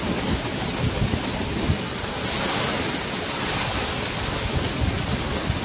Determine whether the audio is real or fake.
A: real